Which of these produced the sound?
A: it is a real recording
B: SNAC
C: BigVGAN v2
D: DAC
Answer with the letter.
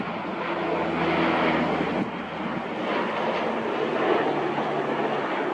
A